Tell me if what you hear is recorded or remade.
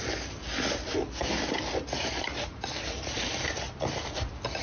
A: recorded